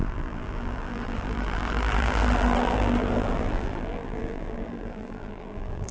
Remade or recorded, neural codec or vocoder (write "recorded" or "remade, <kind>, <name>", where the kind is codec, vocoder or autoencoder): remade, vocoder, BigVGAN v2